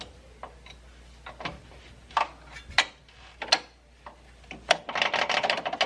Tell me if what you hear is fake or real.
real